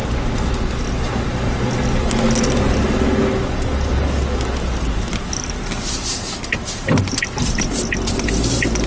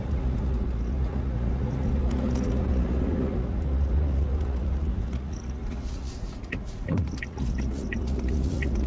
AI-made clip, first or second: second